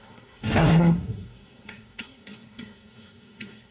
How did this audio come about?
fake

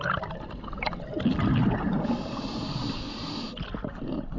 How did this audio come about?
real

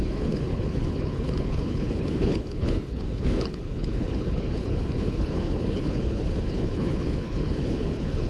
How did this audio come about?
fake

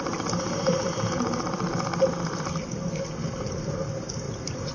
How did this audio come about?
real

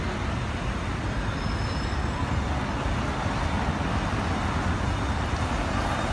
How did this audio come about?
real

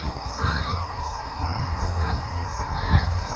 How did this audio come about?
fake